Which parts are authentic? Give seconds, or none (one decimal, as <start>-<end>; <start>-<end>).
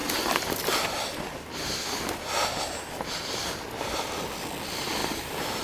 0.0-5.0